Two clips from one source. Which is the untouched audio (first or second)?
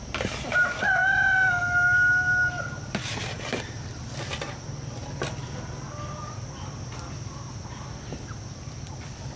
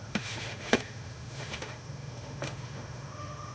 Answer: first